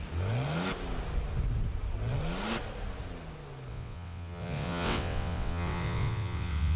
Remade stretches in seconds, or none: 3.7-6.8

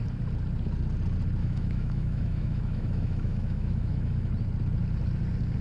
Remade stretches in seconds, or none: 1.4-4.3

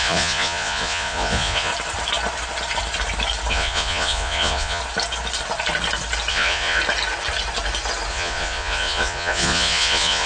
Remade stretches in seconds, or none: 0.0-1.7; 3.5-4.8; 6.3-6.8; 8.1-10.3